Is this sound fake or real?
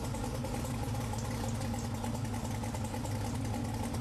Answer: real